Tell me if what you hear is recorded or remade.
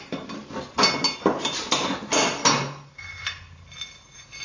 recorded